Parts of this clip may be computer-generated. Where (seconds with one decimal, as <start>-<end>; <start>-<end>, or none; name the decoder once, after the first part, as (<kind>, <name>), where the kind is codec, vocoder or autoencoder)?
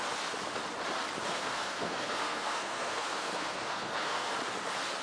1.3-4.3 (codec, SNAC)